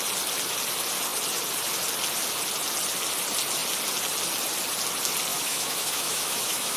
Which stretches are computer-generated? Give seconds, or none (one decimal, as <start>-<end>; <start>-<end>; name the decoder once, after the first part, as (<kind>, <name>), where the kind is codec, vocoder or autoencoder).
5.3-6.8 (autoencoder, DAC-VAE)